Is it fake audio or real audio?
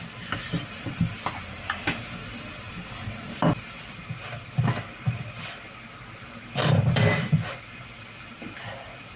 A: real